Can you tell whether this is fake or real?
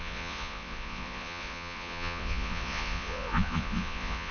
fake